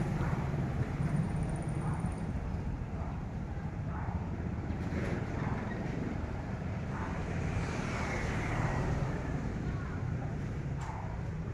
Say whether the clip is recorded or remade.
remade